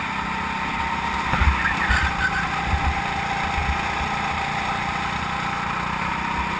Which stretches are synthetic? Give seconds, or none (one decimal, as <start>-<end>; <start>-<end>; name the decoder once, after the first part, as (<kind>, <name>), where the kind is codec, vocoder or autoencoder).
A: none